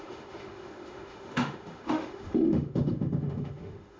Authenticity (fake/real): fake